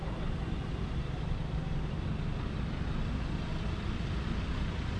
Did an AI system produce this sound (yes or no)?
no